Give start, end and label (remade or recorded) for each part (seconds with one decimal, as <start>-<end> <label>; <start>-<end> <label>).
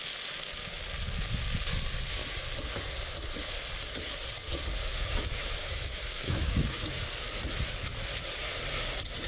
0.0-4.8 recorded; 4.8-6.9 remade; 6.9-9.3 recorded